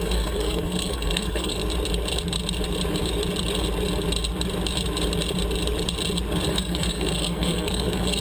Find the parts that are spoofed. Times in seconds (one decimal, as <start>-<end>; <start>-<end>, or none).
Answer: 0.0-1.6; 6.5-8.2